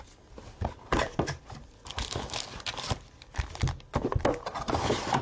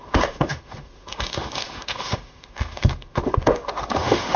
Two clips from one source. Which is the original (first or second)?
first